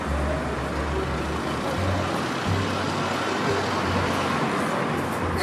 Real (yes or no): yes